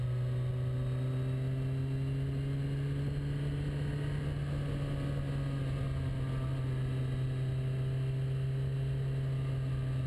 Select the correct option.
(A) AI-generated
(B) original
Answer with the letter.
B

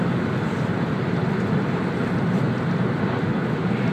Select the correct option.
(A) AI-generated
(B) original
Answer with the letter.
B